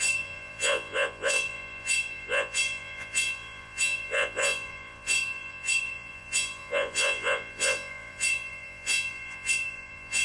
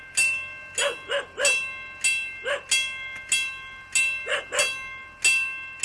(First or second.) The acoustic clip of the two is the second